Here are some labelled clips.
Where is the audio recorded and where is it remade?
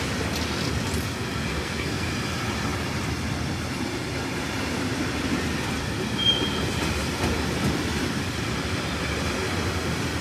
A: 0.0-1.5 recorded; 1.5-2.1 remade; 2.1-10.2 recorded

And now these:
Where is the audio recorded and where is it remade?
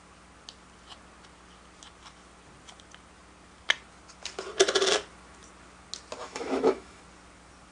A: 0.0-6.2 recorded; 6.2-7.0 remade; 7.0-7.7 recorded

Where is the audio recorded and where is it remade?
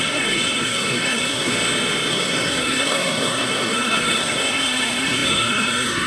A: 0.0-1.5 remade; 1.5-2.1 recorded; 2.1-6.1 remade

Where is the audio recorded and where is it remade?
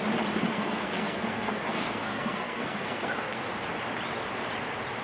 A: 0.0-0.5 recorded; 0.5-3.5 remade; 3.5-5.0 recorded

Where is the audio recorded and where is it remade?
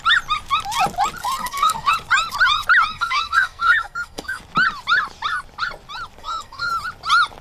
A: 0.0-1.2 recorded; 1.2-1.9 remade; 1.9-2.9 recorded; 2.9-4.4 remade; 4.4-6.2 recorded; 6.2-6.7 remade; 6.7-7.4 recorded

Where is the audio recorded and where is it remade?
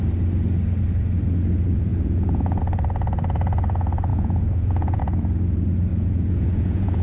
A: 0.0-1.9 recorded; 1.9-2.6 remade; 2.6-4.1 recorded; 4.1-5.0 remade; 5.0-5.9 recorded; 5.9-7.0 remade